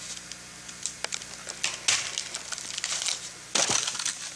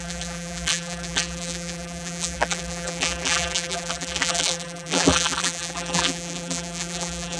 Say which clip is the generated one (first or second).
second